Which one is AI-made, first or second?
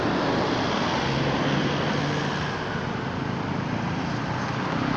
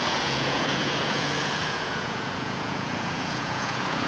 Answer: second